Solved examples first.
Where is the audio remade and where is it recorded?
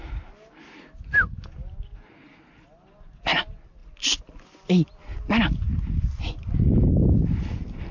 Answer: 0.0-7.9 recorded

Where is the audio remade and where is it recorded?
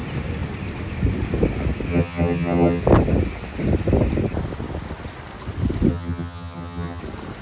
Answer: 0.0-1.9 recorded; 1.9-2.8 remade; 2.8-5.9 recorded; 5.9-7.0 remade; 7.0-7.4 recorded